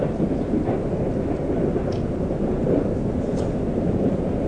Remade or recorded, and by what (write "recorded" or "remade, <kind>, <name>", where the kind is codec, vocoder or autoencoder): recorded